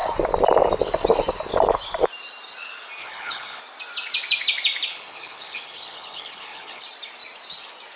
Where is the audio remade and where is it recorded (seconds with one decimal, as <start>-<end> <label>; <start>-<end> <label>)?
0.0-3.0 recorded; 3.0-3.6 remade; 3.6-4.9 recorded; 4.9-6.8 remade; 6.8-8.0 recorded